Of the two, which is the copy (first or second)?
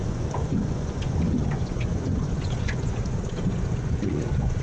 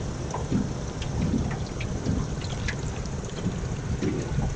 first